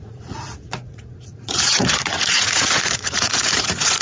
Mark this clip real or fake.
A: fake